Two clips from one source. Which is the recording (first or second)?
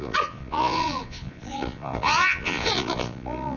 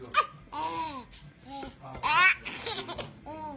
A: second